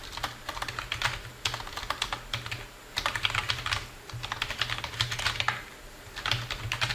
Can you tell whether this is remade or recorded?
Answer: recorded